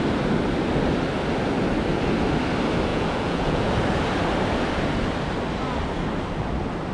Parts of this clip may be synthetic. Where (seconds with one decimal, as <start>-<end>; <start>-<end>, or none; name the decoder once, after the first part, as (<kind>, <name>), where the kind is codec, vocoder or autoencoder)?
2.9-3.7 (vocoder, Vocos)